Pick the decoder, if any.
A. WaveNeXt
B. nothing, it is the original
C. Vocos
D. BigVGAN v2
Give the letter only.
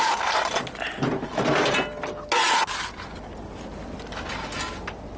B